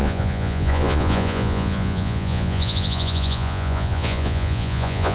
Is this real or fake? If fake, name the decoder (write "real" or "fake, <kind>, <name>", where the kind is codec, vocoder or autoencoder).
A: fake, vocoder, Vocos